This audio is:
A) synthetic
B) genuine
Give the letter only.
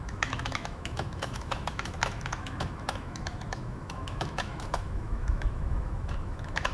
A